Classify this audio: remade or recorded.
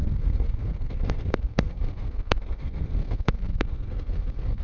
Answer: remade